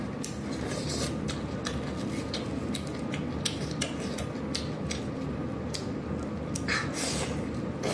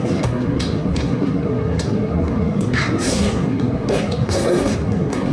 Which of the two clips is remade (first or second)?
second